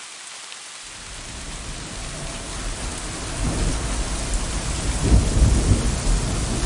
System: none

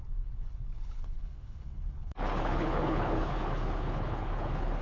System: codec, HILCodec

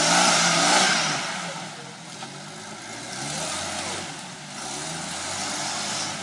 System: none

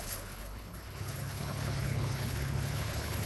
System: codec, HILCodec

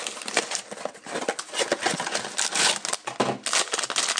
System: none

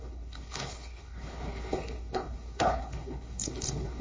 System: codec, HILCodec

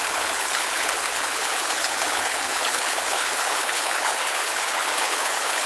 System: codec, HILCodec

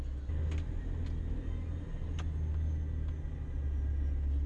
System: none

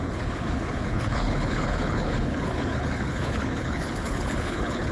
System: codec, HILCodec